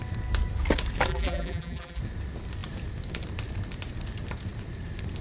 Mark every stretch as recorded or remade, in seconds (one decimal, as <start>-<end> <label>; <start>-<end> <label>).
0.0-1.1 recorded; 1.1-2.0 remade; 2.0-5.2 recorded